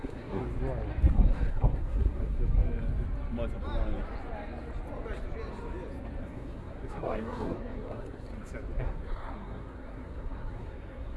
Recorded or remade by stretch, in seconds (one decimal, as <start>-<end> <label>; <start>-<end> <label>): 0.0-0.4 remade; 0.4-1.1 recorded; 1.1-2.4 remade; 2.4-6.2 recorded; 6.2-8.3 remade; 8.3-8.8 recorded; 8.8-11.2 remade